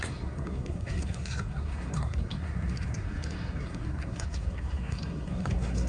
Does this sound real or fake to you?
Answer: fake